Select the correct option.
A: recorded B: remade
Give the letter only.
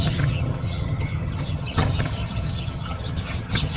B